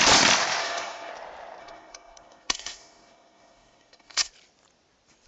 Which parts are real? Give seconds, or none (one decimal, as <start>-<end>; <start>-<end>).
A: 0.0-0.6; 1.1-1.6; 4.3-5.3

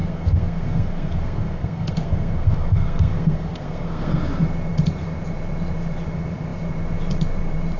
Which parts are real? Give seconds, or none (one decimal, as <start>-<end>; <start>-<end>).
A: 4.2-7.8

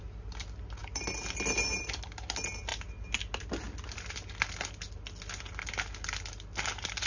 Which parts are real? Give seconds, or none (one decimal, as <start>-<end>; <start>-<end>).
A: 0.0-7.1

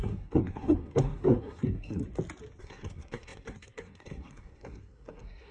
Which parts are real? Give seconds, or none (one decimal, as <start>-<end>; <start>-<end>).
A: 2.0-2.6

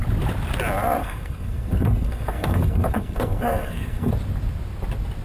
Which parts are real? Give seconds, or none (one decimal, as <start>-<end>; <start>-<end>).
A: 0.0-1.0; 4.1-5.2

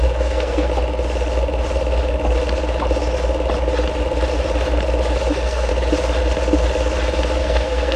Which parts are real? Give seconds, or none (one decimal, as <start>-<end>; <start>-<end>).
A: 0.7-5.3; 5.7-7.4